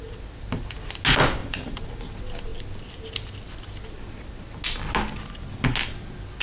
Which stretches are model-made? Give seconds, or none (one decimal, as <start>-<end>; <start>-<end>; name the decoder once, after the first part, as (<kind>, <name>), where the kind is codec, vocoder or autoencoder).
1.4-2.0 (vocoder, BigVGAN v2)